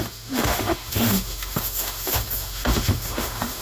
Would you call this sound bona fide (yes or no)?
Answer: no